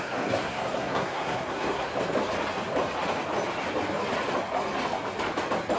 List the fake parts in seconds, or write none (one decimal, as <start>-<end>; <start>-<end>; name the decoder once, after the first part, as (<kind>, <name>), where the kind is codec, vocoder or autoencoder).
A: 0.0-1.9 (codec, SNAC)